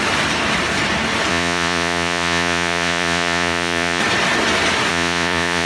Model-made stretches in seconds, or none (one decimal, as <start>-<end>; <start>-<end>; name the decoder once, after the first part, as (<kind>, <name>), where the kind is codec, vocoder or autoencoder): 1.3-4.0 (vocoder, Vocos); 4.9-5.7